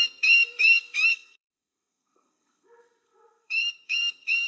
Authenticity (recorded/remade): remade